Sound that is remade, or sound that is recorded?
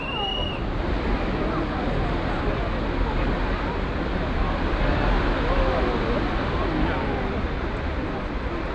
recorded